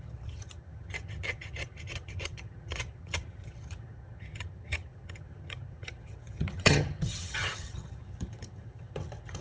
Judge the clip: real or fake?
fake